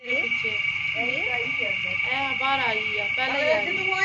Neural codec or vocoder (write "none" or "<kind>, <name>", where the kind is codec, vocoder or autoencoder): none